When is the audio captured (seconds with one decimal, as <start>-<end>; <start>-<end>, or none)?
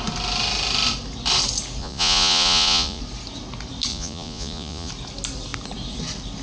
0.0-1.8; 3.0-3.9; 4.9-6.4